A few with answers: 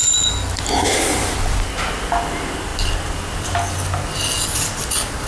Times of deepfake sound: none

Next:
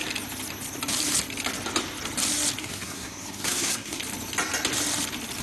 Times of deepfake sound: 2.6-4.0 (codec, SNAC)